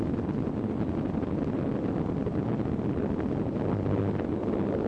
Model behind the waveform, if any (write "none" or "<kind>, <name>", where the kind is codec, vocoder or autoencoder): none